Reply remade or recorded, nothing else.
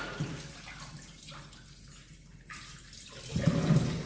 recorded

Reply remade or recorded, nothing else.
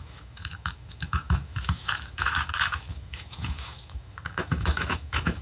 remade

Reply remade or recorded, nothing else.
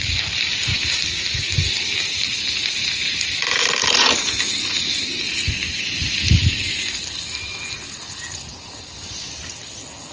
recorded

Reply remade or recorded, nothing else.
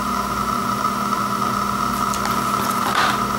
recorded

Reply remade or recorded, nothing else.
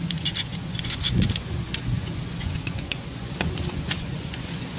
remade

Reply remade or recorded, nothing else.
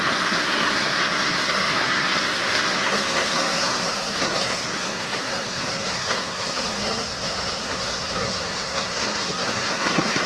remade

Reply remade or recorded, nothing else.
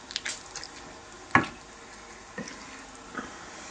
recorded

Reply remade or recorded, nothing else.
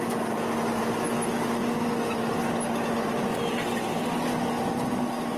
recorded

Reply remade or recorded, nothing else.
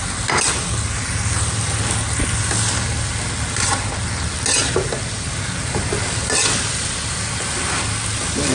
recorded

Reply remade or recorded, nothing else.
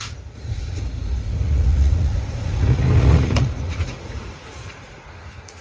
remade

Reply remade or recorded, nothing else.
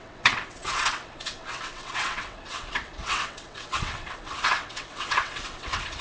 remade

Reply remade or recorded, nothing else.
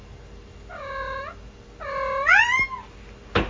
recorded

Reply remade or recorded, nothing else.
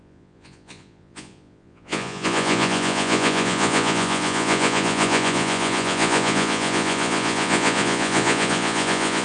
remade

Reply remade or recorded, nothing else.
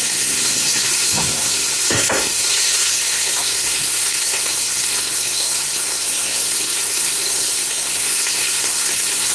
remade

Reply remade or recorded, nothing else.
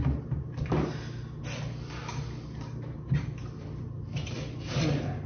recorded